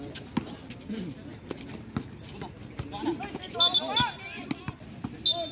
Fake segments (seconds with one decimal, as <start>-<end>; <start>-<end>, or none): none